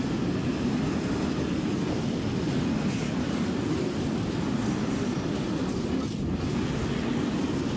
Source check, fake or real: real